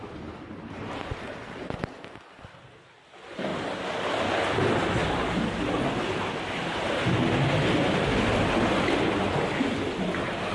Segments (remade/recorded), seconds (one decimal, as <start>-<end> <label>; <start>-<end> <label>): 0.0-10.5 recorded